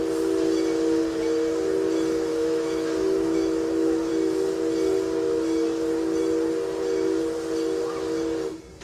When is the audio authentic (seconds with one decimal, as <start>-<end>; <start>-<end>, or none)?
0.0-2.3; 4.1-8.8